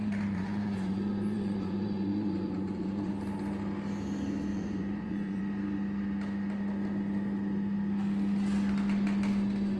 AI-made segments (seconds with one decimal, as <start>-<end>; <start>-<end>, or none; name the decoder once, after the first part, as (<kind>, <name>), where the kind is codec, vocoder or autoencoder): 0.0-3.1 (vocoder, Vocos); 4.5-5.4